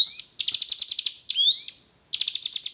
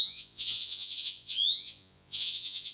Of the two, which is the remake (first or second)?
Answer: second